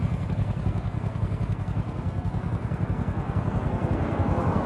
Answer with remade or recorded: remade